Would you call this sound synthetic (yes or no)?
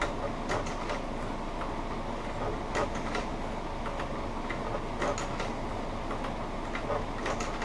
no